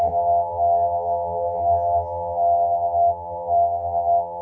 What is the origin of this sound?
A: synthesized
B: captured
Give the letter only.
A